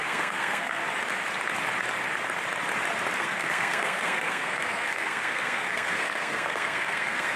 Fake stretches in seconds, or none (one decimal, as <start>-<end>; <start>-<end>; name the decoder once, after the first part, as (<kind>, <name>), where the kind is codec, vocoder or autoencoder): 0.0-0.8 (codec, SNAC); 3.2-7.4

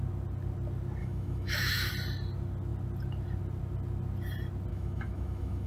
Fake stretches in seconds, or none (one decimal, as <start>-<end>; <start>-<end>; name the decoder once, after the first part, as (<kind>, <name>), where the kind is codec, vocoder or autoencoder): 1.0-1.9 (autoencoder, DAC-VAE); 4.7-5.7

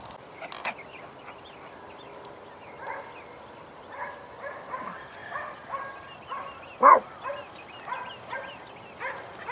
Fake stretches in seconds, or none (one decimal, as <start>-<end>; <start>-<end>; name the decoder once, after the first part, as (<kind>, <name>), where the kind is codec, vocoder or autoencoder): none

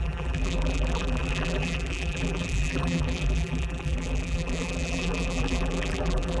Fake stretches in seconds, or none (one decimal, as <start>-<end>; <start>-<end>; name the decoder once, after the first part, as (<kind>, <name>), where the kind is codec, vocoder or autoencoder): 0.0-6.4 (vocoder, BigVGAN v2)

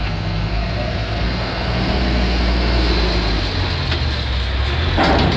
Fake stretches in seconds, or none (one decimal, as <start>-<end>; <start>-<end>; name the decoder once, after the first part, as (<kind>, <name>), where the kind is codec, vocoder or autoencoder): 0.0-2.9 (codec, SNAC)

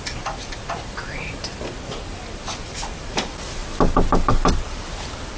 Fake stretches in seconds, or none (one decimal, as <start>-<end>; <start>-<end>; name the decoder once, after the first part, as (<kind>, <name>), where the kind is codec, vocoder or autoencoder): 0.0-3.6 (vocoder, BigVGAN v2); 4.3-5.4

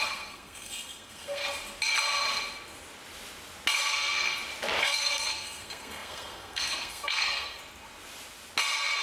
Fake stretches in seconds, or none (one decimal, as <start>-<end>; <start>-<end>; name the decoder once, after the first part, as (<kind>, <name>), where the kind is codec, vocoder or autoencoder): 0.0-1.4 (codec, SNAC); 3.9-4.3; 4.8-7.6

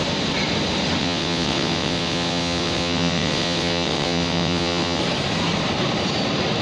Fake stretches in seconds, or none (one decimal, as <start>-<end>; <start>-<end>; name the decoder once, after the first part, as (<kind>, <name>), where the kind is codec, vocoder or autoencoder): 1.0-5.0 (vocoder, WaveNeXt)